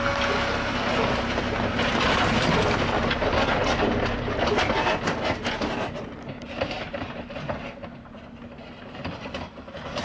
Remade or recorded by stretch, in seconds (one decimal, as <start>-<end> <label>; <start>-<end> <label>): 0.0-10.0 recorded